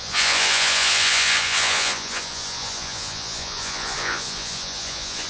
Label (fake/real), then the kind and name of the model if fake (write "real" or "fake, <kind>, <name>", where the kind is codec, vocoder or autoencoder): fake, vocoder, Vocos